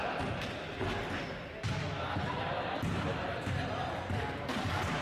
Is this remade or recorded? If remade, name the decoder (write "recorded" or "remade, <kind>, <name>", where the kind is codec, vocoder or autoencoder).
recorded